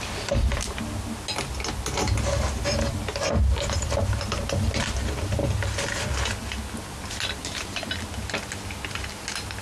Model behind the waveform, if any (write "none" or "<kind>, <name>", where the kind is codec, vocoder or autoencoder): none